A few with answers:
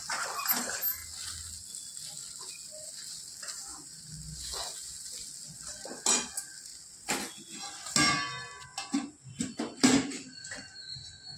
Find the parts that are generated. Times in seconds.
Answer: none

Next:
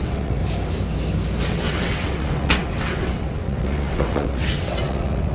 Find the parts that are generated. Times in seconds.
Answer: 0.0-0.4 (vocoder, WaveNeXt); 1.4-5.3

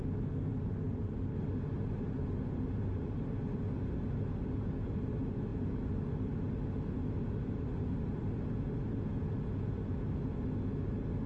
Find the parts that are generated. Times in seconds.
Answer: none

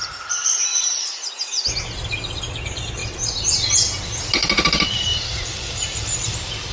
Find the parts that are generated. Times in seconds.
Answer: none

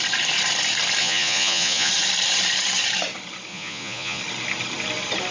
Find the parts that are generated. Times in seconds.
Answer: 1.0-1.9 (vocoder, Vocos); 3.5-4.2